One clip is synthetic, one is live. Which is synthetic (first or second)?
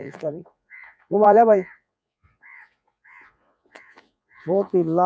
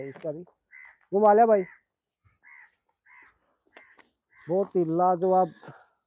first